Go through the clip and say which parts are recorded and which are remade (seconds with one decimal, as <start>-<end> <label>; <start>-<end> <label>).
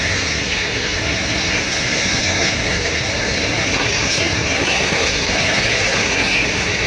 0.0-6.9 remade